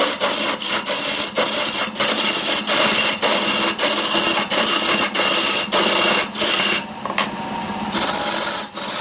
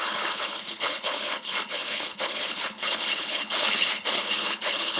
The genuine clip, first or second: first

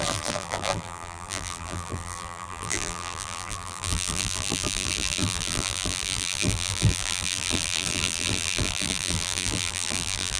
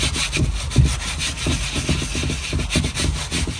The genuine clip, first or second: second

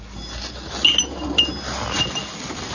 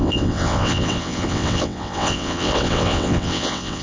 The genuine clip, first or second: first